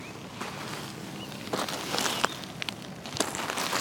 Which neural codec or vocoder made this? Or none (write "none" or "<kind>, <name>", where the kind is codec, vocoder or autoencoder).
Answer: none